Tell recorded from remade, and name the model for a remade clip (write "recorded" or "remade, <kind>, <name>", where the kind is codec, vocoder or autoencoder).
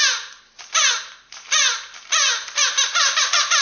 remade, vocoder, BigVGAN v2